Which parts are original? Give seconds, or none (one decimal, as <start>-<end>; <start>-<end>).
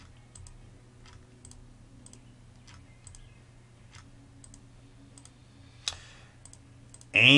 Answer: 0.0-7.4